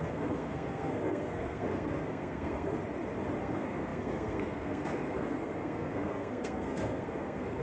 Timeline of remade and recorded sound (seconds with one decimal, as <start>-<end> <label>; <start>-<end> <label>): 0.0-2.8 remade; 2.8-3.4 recorded; 3.4-7.6 remade